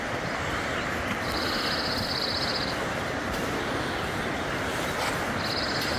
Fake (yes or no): no